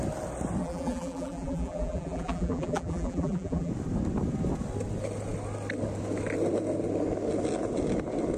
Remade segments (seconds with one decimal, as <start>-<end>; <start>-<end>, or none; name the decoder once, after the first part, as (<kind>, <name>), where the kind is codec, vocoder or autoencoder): 0.6-3.7 (vocoder, BigVGAN v2)